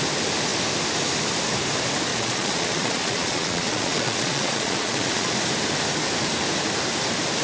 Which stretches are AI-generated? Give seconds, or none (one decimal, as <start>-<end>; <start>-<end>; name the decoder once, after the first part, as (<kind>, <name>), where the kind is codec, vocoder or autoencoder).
2.1-5.3 (vocoder, Vocos)